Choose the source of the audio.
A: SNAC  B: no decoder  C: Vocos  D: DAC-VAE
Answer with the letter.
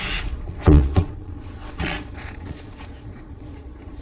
C